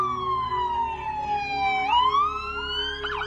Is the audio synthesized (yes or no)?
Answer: no